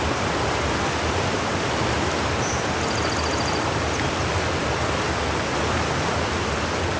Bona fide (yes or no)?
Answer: yes